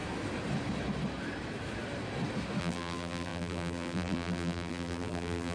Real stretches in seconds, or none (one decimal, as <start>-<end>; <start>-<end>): 0.0-2.6